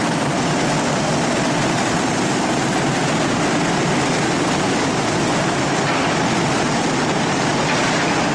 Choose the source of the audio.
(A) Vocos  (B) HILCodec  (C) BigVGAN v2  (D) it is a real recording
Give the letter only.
C